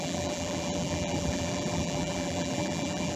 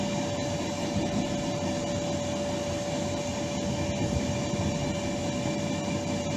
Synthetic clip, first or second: first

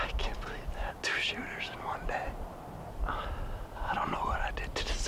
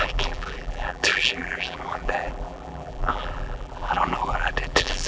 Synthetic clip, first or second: second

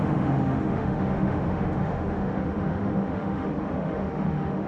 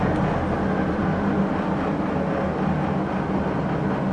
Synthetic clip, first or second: first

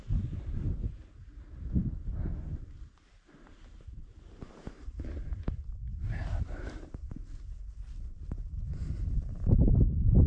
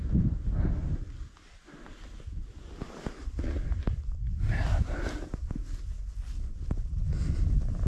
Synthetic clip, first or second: first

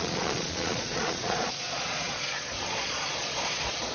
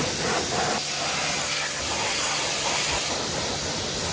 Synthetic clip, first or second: first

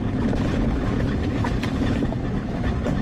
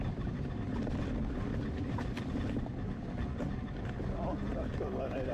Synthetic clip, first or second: first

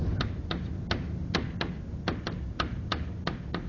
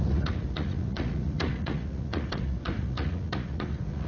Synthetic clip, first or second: second